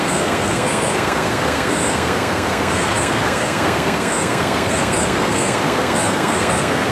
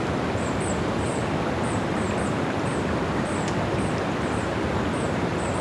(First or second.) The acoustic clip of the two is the second